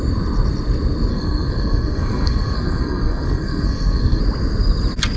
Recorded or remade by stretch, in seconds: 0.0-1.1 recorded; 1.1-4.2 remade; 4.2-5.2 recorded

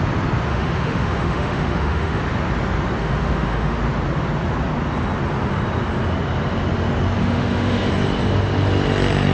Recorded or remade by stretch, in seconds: 0.0-0.5 recorded; 0.5-2.2 remade; 2.2-3.0 recorded; 3.0-3.8 remade; 3.8-7.2 recorded; 7.2-7.9 remade; 7.9-9.3 recorded

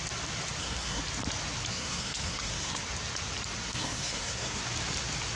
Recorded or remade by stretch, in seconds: 0.0-0.6 recorded; 0.6-1.0 remade; 1.0-1.7 recorded; 1.7-2.8 remade; 2.8-3.7 recorded; 3.7-4.6 remade; 4.6-5.4 recorded

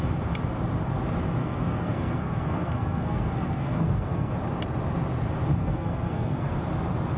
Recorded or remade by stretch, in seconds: 0.0-1.4 recorded; 1.4-4.3 remade; 4.3-5.6 recorded; 5.6-6.6 remade; 6.6-7.2 recorded

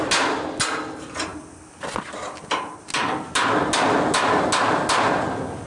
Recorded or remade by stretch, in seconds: 0.0-5.7 recorded